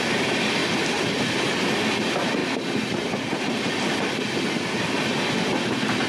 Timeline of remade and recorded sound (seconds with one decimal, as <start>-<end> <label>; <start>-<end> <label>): 0.0-6.1 recorded